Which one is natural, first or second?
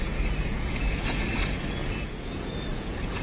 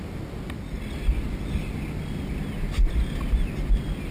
second